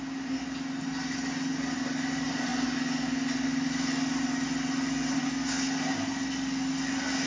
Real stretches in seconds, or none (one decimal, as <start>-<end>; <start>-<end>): 0.0-7.3